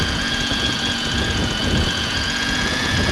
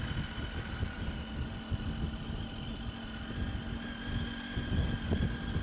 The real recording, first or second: second